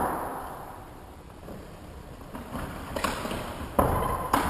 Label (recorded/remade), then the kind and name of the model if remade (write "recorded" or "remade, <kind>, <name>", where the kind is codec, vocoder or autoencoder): remade, vocoder, BigVGAN v2